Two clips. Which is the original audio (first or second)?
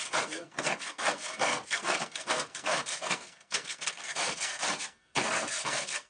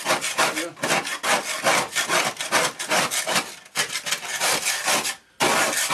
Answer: second